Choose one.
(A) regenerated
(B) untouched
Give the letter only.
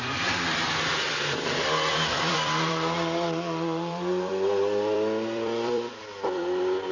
A